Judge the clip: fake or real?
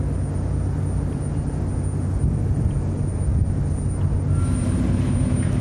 real